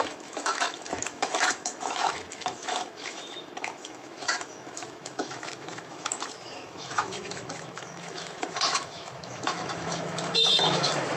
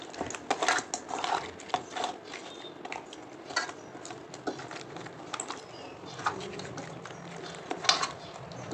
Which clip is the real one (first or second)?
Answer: second